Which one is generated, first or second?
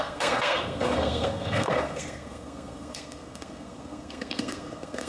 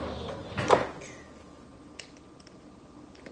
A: first